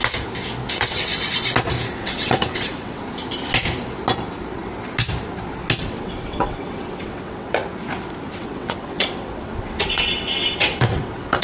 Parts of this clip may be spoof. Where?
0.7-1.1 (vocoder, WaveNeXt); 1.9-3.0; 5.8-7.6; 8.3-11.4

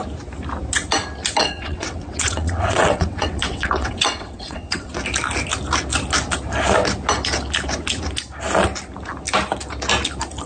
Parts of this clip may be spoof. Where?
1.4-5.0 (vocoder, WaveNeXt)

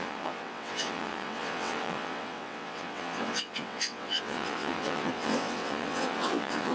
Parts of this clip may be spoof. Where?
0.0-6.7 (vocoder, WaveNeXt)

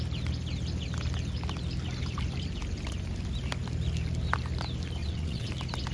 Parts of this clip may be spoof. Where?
5.0-5.5 (vocoder, WaveNeXt)